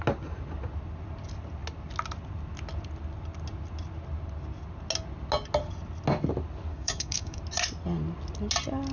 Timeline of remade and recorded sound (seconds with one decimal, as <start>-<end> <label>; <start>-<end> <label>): 0.0-6.7 recorded; 6.7-7.4 remade; 7.4-8.9 recorded